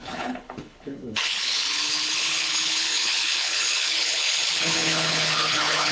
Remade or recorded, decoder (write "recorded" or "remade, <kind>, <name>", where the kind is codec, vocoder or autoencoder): remade, codec, HILCodec